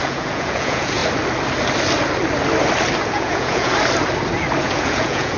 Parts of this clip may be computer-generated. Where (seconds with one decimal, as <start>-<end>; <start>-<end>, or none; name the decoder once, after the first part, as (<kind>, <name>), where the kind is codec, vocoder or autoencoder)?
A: 0.0-1.0 (vocoder, Vocos); 3.1-3.7; 4.6-5.4